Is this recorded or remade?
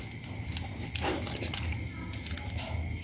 recorded